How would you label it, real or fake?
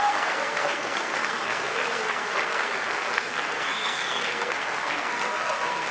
fake